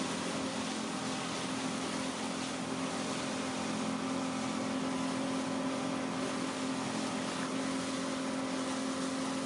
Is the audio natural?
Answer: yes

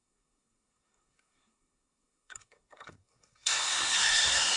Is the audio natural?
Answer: no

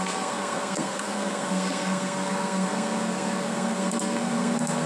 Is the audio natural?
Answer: no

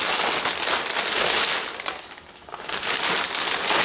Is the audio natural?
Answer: yes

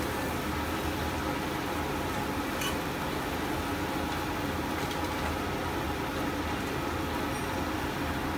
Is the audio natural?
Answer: yes